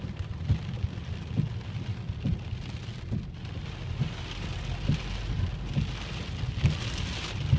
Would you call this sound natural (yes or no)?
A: yes